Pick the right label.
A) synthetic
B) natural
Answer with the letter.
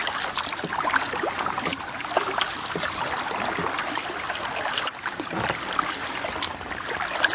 B